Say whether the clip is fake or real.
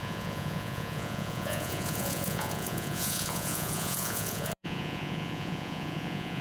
fake